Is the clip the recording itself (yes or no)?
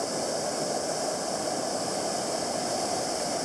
yes